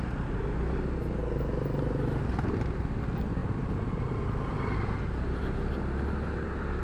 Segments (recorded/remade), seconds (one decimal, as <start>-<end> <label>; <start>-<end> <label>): 0.0-6.8 recorded